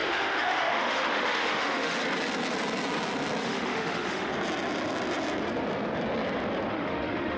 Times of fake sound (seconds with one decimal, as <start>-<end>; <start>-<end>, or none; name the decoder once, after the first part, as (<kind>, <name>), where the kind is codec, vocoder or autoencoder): 0.0-2.0 (autoencoder, DAC-VAE); 3.4-4.3; 6.7-7.4